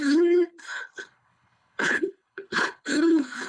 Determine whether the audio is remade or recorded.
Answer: remade